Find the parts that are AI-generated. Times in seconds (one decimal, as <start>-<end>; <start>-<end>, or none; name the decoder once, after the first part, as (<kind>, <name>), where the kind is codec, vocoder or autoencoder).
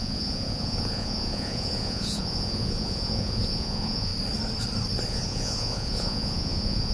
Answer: 0.0-4.1 (vocoder, Vocos); 5.1-6.9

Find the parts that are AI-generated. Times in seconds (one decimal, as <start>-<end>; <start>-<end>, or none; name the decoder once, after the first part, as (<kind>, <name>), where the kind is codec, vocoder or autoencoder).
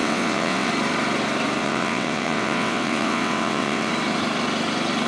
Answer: 0.0-0.7 (vocoder, WaveNeXt); 1.6-3.9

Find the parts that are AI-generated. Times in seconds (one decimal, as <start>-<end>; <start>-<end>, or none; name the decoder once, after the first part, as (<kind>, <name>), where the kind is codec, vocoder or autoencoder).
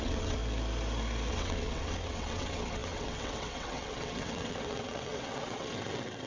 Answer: 0.0-0.4 (vocoder, WaveNeXt); 1.3-6.3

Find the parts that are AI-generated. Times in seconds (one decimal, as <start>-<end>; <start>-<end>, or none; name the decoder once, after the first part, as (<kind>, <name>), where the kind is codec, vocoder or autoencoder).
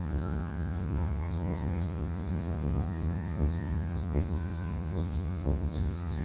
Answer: 0.0-6.2 (vocoder, Vocos)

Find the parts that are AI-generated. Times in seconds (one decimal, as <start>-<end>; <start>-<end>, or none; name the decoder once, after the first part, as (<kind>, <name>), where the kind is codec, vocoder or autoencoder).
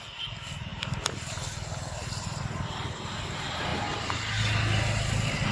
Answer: 0.7-2.4 (vocoder, BigVGAN v2); 3.7-4.3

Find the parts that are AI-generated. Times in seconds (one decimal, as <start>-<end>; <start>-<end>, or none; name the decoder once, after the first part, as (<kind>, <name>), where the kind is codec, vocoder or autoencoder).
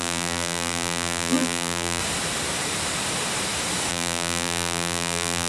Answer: 0.0-2.0 (vocoder, BigVGAN v2); 3.9-5.5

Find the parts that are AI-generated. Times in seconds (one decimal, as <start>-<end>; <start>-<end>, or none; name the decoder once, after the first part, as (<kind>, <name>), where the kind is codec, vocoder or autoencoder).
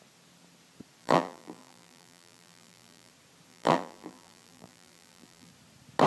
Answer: 1.0-3.1 (vocoder, BigVGAN v2); 3.5-5.5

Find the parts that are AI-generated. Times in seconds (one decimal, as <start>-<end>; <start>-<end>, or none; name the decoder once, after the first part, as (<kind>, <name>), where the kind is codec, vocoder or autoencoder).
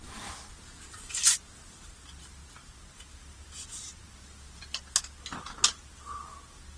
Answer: none